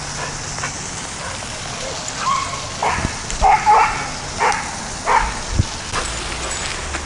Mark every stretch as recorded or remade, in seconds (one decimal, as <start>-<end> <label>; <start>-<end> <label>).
0.0-7.1 recorded

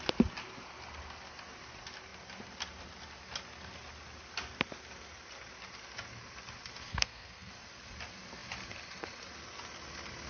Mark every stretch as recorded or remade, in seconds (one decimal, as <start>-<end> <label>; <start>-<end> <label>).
0.0-6.9 recorded; 6.9-7.5 remade; 7.5-10.3 recorded

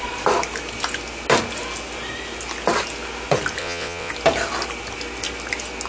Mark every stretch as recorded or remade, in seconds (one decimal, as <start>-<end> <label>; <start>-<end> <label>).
0.0-3.6 recorded; 3.6-4.1 remade; 4.1-5.9 recorded